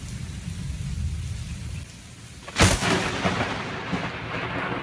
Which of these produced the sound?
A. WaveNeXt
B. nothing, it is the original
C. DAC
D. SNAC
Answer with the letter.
B